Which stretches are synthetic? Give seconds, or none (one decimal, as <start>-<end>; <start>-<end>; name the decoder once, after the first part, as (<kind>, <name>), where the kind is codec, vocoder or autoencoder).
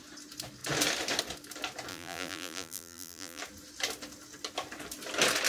1.9-3.4 (vocoder, BigVGAN v2)